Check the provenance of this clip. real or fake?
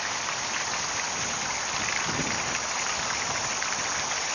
real